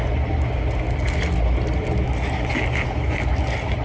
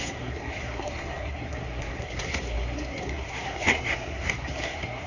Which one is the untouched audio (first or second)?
first